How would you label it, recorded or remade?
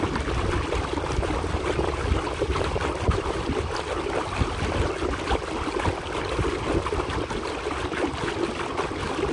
recorded